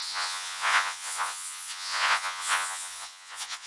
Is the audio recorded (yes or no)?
no